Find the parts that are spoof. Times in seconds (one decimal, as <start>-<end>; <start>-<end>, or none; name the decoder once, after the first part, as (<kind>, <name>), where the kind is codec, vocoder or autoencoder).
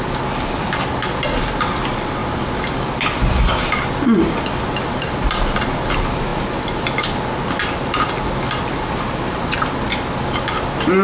none